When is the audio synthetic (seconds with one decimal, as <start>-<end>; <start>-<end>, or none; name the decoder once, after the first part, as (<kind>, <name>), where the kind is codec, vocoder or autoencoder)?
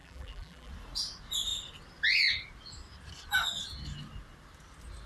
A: 0.0-0.7 (vocoder, BigVGAN v2)